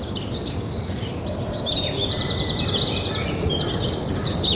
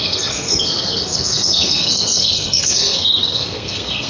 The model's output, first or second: second